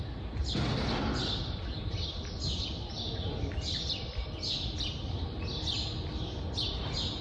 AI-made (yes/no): no